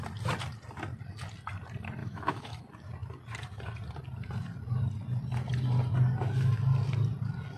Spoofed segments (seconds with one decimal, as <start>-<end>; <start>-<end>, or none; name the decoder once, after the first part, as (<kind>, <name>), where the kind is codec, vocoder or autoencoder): 2.0-2.6 (autoencoder, DAC-VAE)